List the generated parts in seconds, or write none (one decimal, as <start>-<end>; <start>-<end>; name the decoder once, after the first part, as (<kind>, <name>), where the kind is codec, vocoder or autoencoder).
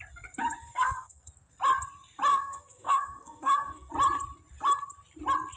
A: 0.6-1.3 (codec, SNAC); 2.3-3.9